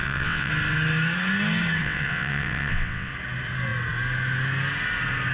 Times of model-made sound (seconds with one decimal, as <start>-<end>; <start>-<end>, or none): 0.0-0.5; 1.8-3.1